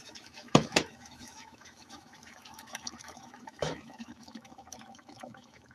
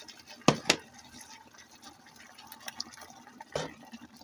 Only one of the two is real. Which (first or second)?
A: second